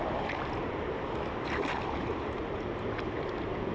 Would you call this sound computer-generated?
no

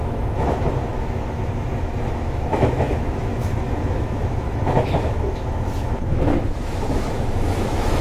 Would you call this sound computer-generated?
yes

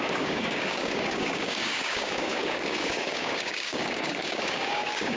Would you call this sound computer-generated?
yes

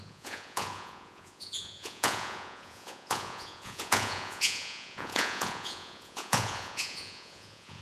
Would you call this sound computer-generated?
yes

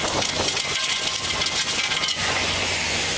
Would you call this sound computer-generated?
yes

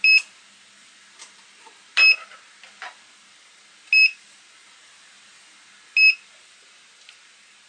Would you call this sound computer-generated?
no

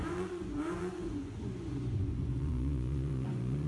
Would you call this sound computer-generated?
yes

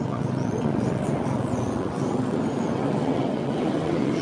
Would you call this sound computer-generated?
yes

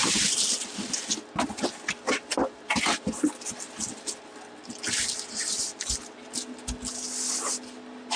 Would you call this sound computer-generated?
no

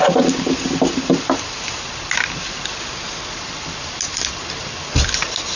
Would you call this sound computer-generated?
no